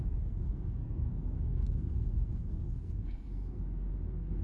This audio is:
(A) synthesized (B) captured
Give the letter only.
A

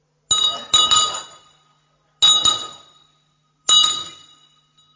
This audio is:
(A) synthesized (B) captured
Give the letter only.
B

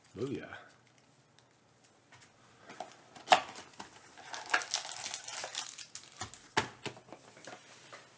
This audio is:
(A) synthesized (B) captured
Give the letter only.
B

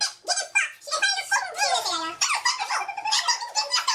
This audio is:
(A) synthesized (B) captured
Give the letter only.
B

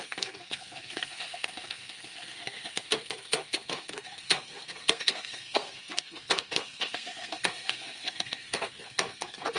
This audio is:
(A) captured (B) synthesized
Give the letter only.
B